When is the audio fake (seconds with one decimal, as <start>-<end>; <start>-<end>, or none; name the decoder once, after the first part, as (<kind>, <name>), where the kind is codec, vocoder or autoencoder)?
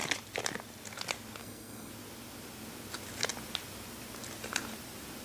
1.4-1.9 (codec, SNAC)